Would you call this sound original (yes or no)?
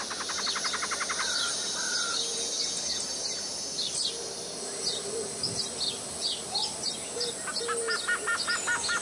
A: yes